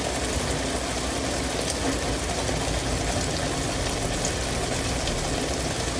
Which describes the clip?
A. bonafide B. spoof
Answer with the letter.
A